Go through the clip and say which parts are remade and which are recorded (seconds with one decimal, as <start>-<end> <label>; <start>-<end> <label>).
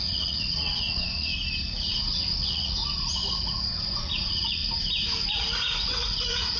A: 0.0-1.3 remade; 1.3-1.9 recorded; 1.9-2.8 remade; 2.8-3.3 recorded; 3.3-4.6 remade; 4.6-5.3 recorded; 5.3-6.6 remade